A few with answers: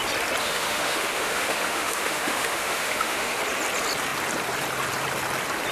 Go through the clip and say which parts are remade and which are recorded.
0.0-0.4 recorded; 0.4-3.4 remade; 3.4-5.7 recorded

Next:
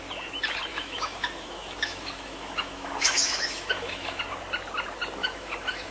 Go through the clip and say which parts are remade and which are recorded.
0.0-0.7 recorded; 0.7-4.2 remade; 4.2-5.2 recorded; 5.2-5.9 remade

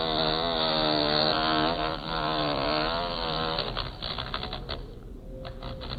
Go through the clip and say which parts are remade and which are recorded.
0.0-6.0 recorded

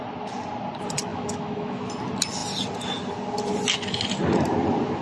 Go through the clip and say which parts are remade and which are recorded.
0.0-1.1 recorded; 1.1-1.9 remade; 1.9-5.0 recorded